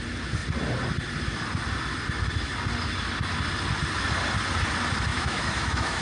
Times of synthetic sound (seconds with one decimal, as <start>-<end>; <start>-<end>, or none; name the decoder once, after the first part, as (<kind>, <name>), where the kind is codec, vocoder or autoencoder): 5.1-6.0 (autoencoder, DAC-VAE)